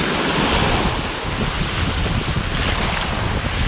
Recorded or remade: recorded